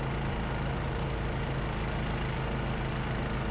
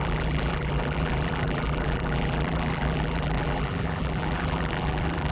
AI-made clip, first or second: second